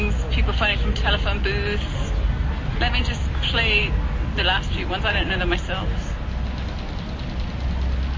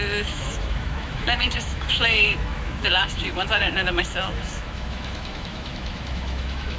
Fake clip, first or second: second